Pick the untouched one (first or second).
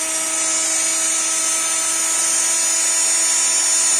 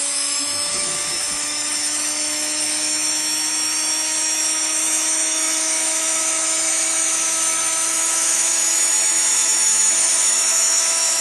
first